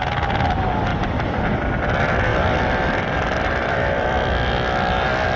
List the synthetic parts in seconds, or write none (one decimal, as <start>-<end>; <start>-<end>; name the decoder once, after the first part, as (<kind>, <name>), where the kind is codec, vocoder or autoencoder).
2.3-4.5 (vocoder, BigVGAN v2)